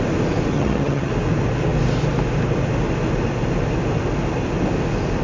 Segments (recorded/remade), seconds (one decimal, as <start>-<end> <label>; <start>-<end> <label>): 0.0-0.5 recorded; 0.5-1.1 remade; 1.1-5.2 recorded